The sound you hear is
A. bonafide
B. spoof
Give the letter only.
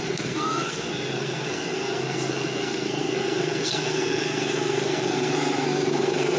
B